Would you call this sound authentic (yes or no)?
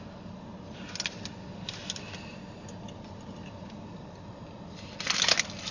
yes